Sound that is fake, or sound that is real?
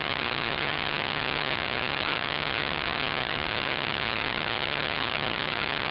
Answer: fake